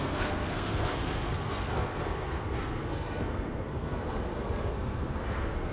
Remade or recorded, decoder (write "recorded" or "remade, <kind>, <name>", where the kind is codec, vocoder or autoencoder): remade, codec, SNAC